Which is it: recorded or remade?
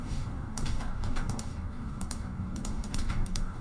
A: remade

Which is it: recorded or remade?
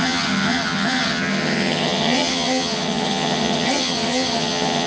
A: remade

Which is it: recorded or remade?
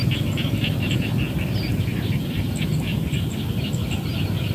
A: recorded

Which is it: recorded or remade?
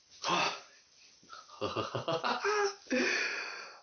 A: recorded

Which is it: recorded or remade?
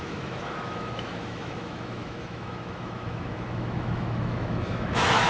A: remade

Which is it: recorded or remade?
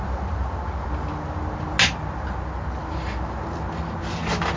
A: recorded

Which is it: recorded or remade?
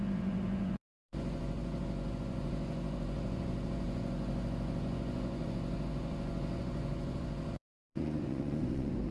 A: remade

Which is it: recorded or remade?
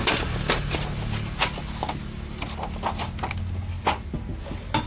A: recorded